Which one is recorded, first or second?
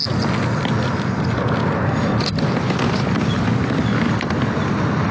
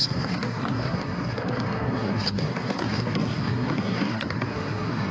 first